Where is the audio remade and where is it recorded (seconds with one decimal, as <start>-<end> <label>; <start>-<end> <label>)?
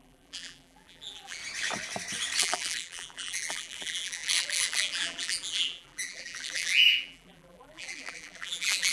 0.0-1.4 remade; 1.4-2.4 recorded; 2.4-8.9 remade